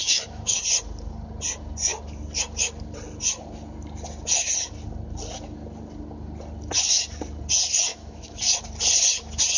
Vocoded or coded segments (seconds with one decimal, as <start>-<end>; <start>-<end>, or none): 0.0-0.6; 7.9-8.4